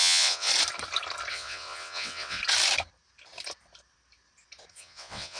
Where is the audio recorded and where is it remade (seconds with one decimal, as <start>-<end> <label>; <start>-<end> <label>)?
0.0-0.5 remade; 0.5-1.3 recorded; 1.3-2.4 remade; 2.4-4.7 recorded; 4.7-5.4 remade